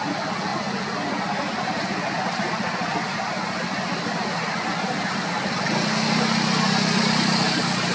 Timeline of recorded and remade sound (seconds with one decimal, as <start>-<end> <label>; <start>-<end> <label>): 0.0-7.9 recorded